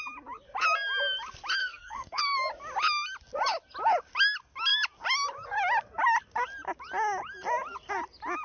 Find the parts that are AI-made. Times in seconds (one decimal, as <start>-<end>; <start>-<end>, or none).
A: 1.6-2.2